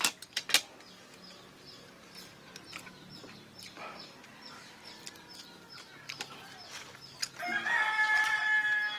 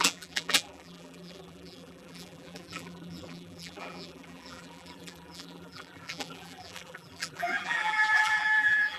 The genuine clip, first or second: first